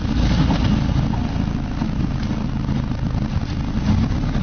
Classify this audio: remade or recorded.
recorded